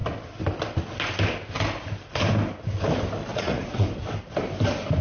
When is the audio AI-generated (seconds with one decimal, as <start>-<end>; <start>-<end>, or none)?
3.3-3.9